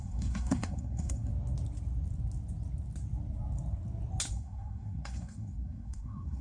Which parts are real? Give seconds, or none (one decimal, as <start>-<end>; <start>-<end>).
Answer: 1.3-4.3

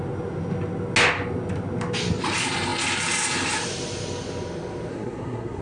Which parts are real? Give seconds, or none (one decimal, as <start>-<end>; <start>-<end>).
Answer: 0.0-4.9